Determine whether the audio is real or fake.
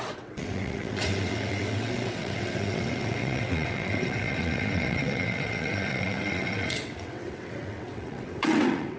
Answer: fake